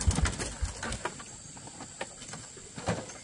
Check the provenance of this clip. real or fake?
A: real